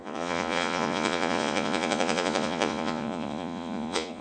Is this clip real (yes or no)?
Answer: no